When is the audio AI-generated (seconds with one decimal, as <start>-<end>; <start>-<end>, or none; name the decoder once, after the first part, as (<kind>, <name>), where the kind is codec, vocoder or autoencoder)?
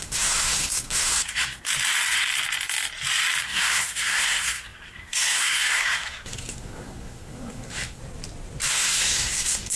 0.0-1.7 (codec, SNAC); 3.4-8.0; 8.7-9.8